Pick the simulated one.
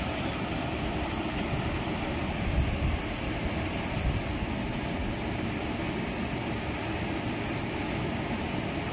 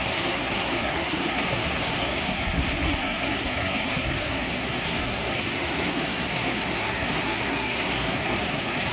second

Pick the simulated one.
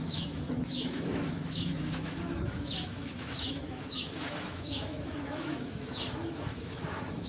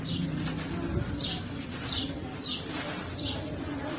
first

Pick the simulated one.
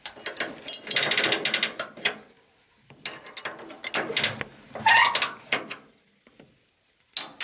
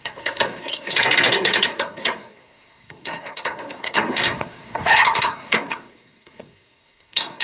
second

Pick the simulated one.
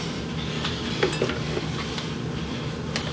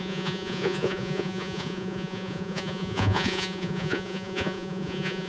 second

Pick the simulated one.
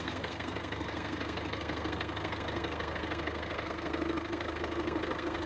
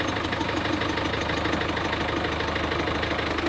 first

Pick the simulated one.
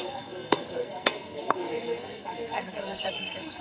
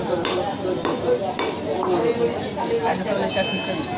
first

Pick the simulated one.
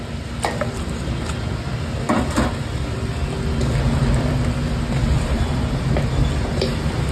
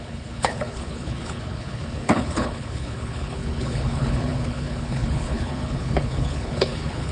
second